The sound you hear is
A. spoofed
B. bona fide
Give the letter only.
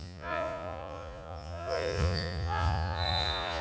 A